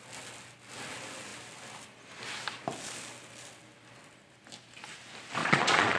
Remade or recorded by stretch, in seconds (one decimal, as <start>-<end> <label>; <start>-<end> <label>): 0.0-5.4 recorded; 5.4-6.0 remade